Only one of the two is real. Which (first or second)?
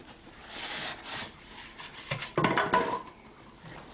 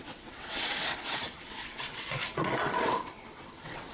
first